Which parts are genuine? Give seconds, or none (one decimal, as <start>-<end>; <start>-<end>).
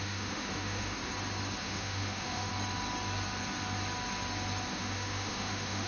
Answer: 1.0-1.6; 2.5-4.7